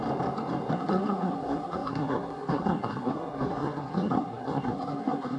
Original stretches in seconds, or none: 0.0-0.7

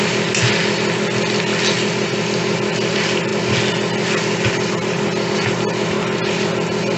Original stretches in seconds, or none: 0.0-7.0

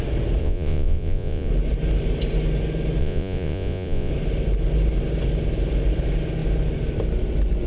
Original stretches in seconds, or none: 0.0-0.4; 1.5-3.0; 4.1-7.7

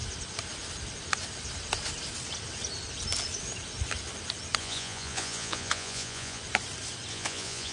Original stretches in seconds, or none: 0.0-4.6; 6.4-7.1